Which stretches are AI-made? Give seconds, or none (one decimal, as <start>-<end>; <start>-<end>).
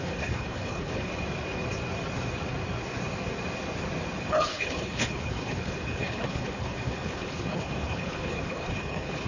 0.0-1.1; 4.2-9.3